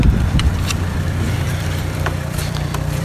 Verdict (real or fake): fake